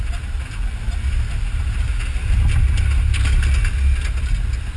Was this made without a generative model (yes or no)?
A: yes